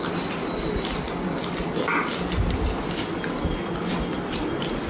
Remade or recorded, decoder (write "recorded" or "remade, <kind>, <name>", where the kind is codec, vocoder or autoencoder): recorded